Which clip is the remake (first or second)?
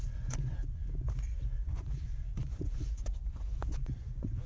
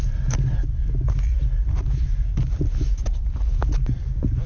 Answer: first